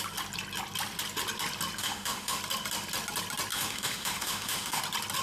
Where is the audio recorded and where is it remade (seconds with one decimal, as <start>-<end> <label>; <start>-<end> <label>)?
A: 0.0-1.8 recorded; 1.8-2.4 remade; 2.4-3.5 recorded; 3.5-4.8 remade; 4.8-5.2 recorded